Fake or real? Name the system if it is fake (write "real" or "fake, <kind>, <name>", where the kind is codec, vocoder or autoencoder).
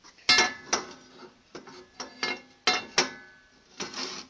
real